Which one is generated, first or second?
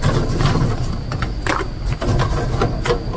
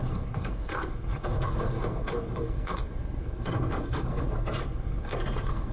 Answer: second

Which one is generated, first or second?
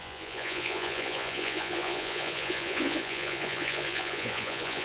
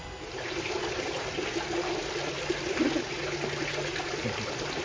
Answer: first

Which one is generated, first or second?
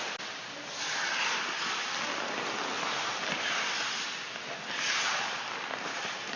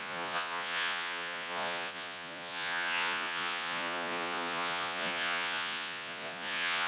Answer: second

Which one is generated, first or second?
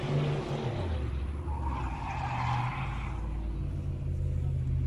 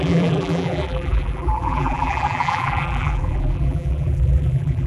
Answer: second